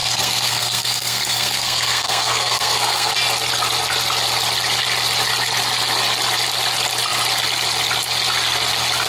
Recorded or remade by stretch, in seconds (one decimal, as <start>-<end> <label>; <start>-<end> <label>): 0.0-3.1 remade; 3.1-9.1 recorded